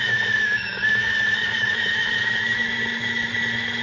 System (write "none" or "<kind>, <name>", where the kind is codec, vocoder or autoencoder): autoencoder, DAC-VAE